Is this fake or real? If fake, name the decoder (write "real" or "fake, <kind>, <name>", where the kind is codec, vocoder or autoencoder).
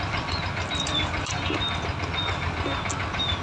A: real